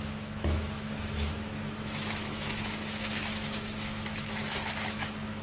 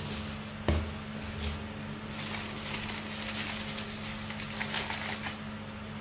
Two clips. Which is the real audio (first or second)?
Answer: second